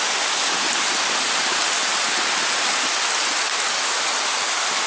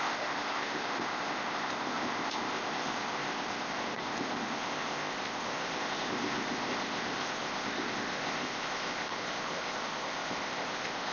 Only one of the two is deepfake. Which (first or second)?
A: second